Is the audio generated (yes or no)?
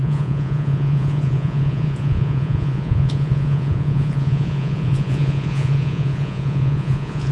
yes